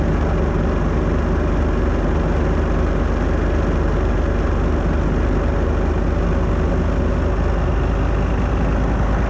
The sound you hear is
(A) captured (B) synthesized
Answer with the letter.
A